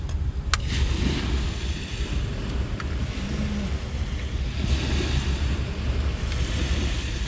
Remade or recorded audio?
recorded